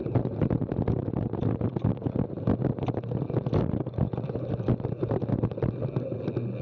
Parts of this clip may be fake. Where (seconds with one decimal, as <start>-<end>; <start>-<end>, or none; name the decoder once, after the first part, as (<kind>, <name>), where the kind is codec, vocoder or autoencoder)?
none